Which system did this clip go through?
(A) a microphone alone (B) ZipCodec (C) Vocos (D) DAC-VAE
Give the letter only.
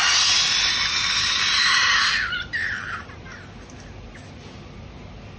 A